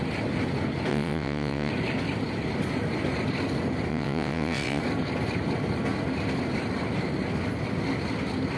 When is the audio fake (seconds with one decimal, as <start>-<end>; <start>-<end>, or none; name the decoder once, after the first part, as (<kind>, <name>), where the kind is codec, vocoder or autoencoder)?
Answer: 0.9-1.7 (vocoder, WaveNeXt); 3.9-4.8